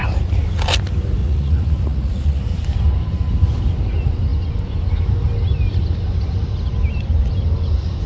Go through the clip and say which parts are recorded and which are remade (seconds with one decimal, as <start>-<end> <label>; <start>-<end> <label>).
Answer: 0.0-1.2 recorded; 1.2-2.4 remade; 2.4-8.1 recorded